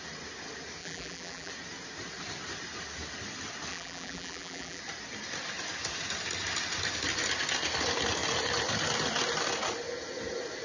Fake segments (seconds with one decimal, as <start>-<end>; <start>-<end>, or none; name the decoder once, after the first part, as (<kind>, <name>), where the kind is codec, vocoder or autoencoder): 0.8-1.5 (vocoder, BigVGAN v2); 3.7-4.8